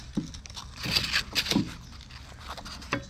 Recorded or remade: recorded